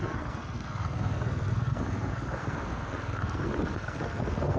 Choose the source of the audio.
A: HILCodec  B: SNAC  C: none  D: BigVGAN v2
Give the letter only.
B